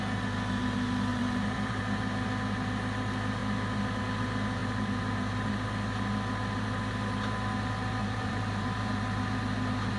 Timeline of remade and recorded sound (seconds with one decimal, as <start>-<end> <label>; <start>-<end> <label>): 0.0-1.1 recorded; 1.1-1.8 remade; 1.8-4.6 recorded; 4.6-5.5 remade; 5.5-8.0 recorded; 8.0-9.2 remade; 9.2-10.0 recorded